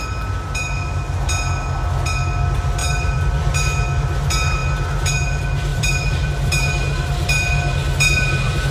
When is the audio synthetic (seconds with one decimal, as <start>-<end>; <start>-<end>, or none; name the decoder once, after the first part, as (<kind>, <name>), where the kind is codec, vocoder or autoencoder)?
2.8-3.5 (vocoder, BigVGAN v2); 5.7-6.3